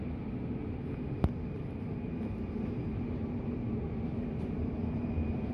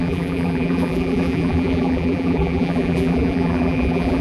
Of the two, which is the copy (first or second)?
second